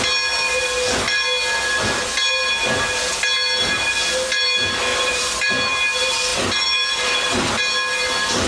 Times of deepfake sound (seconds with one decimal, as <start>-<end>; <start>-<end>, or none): 4.9-5.5; 6.3-7.6